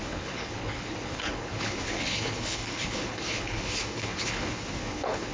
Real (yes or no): no